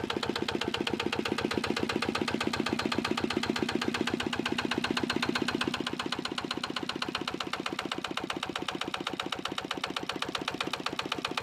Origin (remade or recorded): recorded